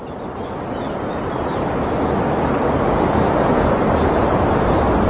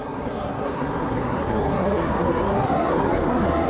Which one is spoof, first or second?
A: second